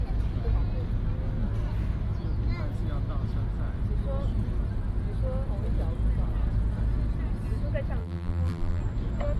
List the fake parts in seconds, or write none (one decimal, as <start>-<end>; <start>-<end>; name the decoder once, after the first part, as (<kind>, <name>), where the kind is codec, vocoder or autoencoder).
8.0-8.8 (vocoder, BigVGAN v2)